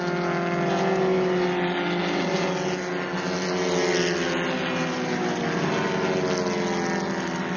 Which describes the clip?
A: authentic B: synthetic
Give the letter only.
A